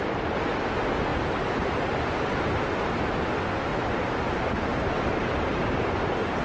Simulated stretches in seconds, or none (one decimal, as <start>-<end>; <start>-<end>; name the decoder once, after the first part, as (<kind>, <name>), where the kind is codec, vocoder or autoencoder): 1.1-2.7 (vocoder, BigVGAN v2); 3.7-6.4